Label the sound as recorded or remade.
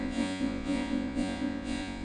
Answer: remade